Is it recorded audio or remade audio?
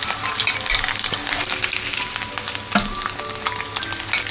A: recorded